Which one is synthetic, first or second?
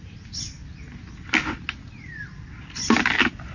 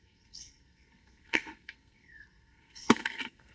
second